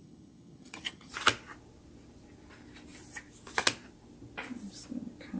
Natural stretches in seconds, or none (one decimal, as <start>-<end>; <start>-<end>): 1.1-5.4

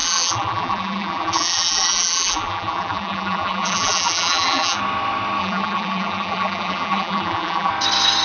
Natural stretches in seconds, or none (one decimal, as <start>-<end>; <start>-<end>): 4.8-5.4; 7.7-8.2

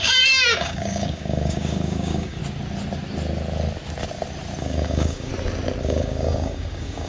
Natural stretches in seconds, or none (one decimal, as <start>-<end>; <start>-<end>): 2.4-4.6; 5.3-5.8

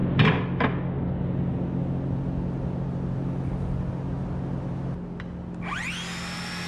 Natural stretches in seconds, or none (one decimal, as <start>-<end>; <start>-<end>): 0.0-6.7

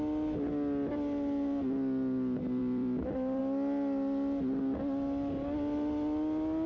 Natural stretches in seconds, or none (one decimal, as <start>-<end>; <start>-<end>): 0.0-2.6; 3.4-6.7

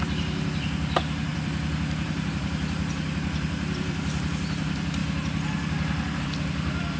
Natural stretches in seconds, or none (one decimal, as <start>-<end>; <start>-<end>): 5.0-6.2